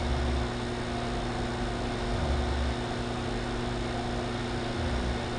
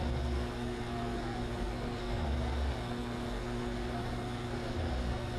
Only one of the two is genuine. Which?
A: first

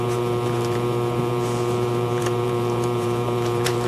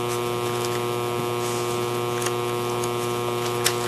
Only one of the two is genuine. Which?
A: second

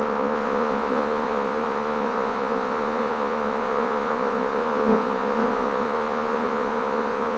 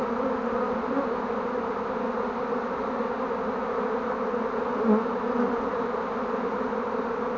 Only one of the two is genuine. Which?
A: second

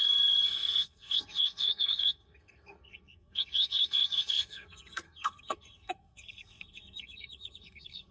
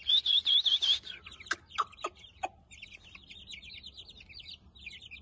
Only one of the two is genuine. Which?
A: second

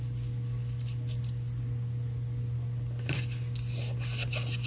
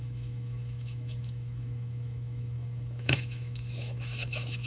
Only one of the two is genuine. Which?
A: first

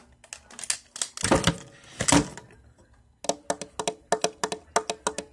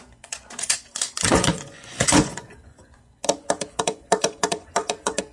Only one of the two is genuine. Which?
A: first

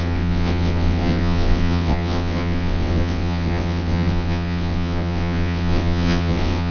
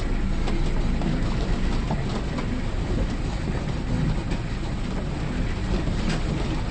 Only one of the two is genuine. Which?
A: second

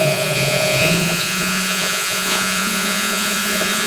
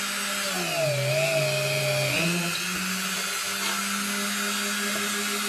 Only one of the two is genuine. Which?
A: second